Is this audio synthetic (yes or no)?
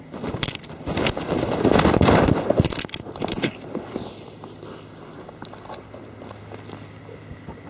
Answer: no